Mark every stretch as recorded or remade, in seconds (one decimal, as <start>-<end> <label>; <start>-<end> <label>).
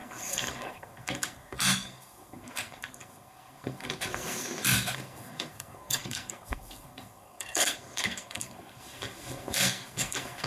0.0-10.5 remade